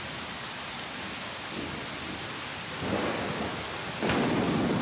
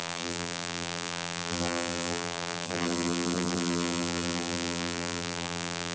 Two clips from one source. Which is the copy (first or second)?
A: second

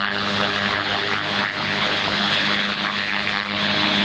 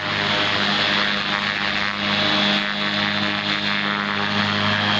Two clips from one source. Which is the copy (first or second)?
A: first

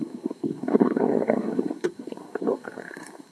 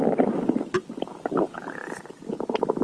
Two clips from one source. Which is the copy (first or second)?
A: first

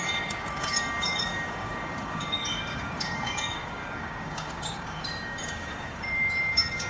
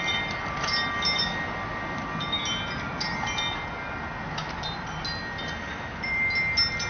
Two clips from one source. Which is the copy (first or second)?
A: first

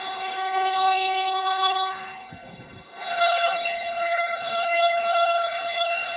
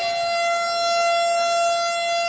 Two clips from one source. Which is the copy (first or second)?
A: first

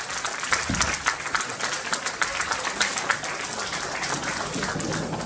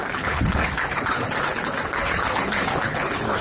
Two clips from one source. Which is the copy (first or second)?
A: second